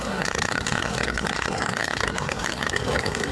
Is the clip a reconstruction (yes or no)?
yes